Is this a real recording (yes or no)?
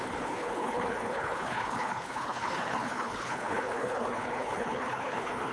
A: no